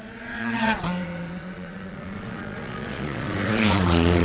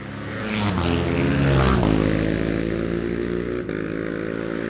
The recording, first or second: second